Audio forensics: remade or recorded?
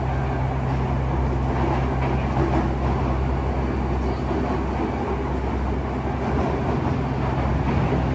recorded